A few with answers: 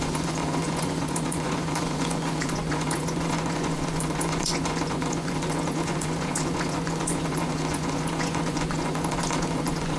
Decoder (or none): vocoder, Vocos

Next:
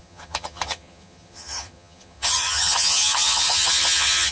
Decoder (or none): vocoder, HiFi-GAN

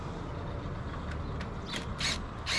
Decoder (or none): none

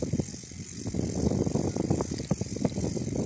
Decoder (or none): none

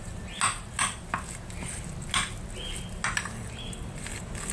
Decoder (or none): none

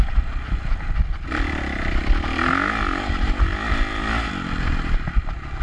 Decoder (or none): none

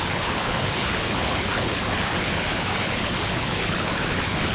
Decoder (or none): codec, HILCodec